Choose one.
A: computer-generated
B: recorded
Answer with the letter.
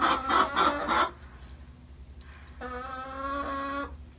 B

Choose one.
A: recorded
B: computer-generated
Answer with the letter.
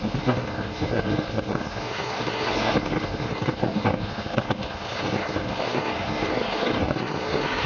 B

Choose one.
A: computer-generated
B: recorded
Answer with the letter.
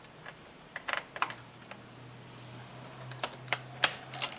B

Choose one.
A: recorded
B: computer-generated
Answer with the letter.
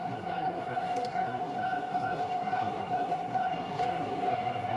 B